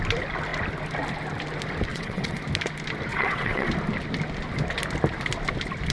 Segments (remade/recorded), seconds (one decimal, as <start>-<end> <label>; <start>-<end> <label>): 0.0-1.9 recorded; 1.9-2.4 remade; 2.4-3.1 recorded; 3.1-3.7 remade; 3.7-5.9 recorded